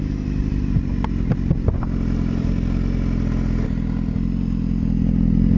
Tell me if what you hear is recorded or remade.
recorded